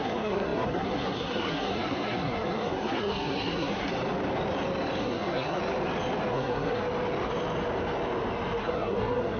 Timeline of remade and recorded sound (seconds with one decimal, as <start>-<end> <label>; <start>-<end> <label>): 0.0-3.9 remade; 3.9-5.0 recorded; 5.0-5.6 remade; 5.6-6.3 recorded; 6.3-6.8 remade; 6.8-8.6 recorded; 8.6-9.4 remade